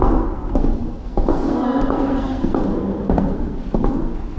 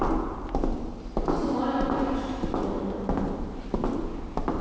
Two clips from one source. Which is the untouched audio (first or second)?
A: second